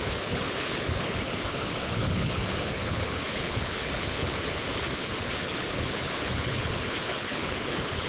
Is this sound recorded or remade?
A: remade